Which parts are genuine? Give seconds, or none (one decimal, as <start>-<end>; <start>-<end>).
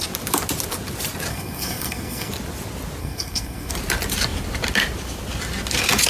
0.0-1.3; 2.3-3.0; 3.7-6.1